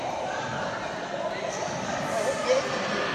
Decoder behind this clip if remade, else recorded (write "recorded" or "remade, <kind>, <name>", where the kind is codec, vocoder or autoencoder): recorded